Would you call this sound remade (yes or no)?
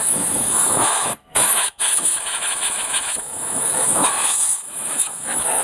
yes